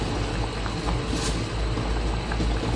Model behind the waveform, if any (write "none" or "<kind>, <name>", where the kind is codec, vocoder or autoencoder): none